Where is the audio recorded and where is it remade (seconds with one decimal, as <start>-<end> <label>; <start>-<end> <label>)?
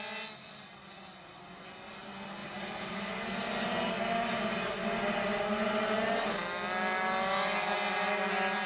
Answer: 0.0-2.4 recorded; 2.4-3.1 remade; 3.1-8.7 recorded